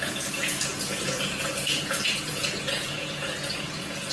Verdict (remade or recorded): remade